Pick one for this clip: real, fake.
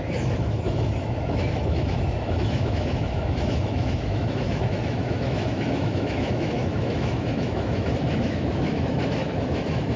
fake